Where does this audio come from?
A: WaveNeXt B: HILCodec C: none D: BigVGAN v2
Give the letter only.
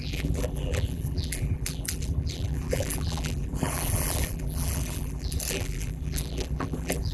D